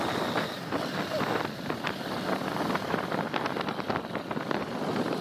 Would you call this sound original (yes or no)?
yes